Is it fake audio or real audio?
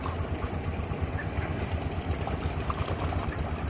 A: real